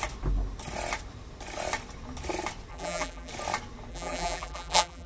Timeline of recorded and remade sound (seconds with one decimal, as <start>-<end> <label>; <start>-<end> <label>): 0.0-2.7 recorded; 2.7-3.3 remade; 3.3-3.9 recorded; 3.9-5.1 remade